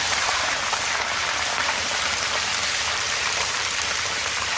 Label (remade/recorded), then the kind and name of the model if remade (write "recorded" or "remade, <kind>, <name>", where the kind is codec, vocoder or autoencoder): remade, vocoder, BigVGAN v2